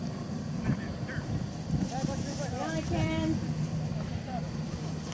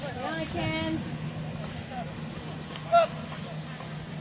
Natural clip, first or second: second